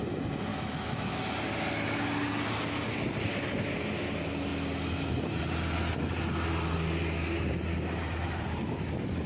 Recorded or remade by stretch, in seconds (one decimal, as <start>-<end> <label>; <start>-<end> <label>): 0.0-0.5 recorded; 0.5-1.2 remade; 1.2-9.3 recorded